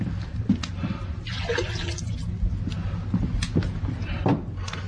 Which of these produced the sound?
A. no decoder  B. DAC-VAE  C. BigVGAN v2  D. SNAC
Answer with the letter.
A